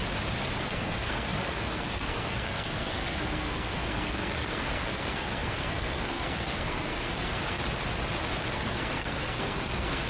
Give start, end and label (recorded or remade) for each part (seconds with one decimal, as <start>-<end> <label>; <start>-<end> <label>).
0.0-0.6 recorded; 0.6-7.6 remade; 7.6-8.5 recorded; 8.5-10.1 remade